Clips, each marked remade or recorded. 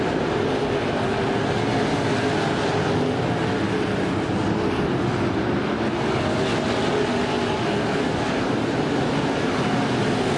recorded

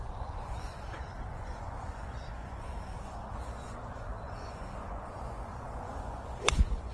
remade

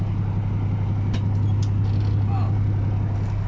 recorded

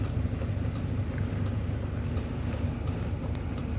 recorded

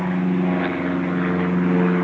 recorded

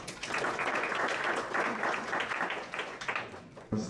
remade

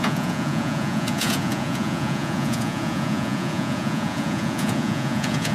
remade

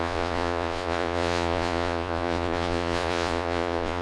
remade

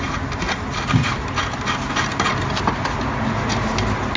recorded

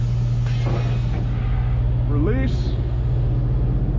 recorded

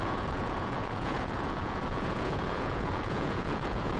remade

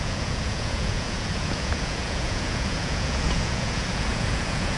remade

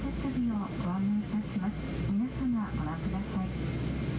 recorded